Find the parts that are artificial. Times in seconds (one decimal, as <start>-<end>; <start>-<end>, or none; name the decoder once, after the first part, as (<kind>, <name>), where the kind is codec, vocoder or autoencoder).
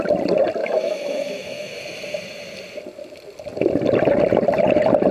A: 0.6-1.8 (autoencoder, DAC-VAE)